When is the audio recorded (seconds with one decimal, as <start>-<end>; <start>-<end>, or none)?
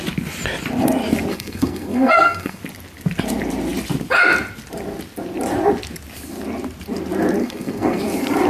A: 0.0-1.3; 2.6-7.4; 8.0-8.5